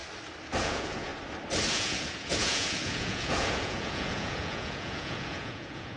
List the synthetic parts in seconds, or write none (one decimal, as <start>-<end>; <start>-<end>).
0.6-1.1; 1.7-6.0